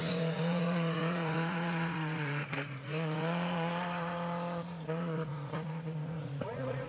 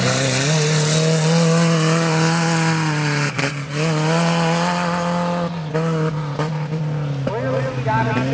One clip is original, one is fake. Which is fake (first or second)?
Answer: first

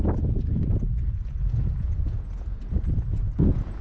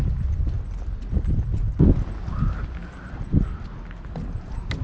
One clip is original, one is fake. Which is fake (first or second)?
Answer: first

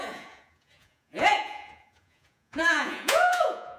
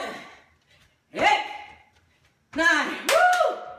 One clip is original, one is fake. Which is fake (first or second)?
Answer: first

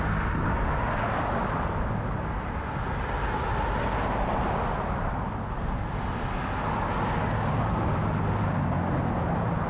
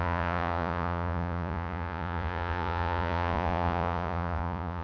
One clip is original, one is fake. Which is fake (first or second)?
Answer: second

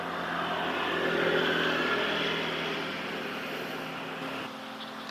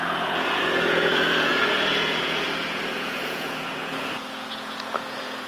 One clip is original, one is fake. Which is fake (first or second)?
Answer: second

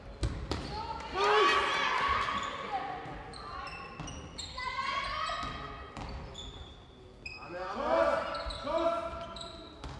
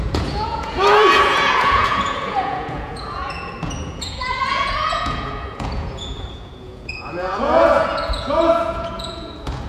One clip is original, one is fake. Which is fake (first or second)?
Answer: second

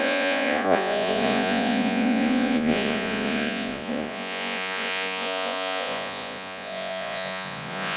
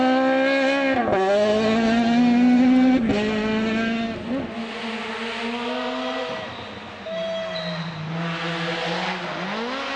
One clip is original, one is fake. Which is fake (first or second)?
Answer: first